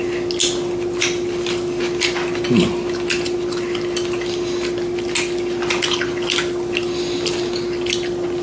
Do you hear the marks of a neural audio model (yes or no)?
no